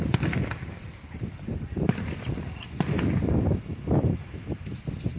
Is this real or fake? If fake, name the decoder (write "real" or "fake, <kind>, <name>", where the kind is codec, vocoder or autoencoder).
fake, vocoder, BigVGAN v2